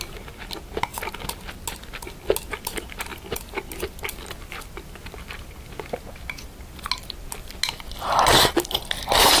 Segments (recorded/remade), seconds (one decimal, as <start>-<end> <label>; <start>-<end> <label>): 0.0-9.4 recorded